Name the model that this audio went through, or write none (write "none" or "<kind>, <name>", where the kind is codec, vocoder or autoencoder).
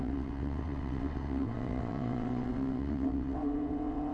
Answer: vocoder, WaveNeXt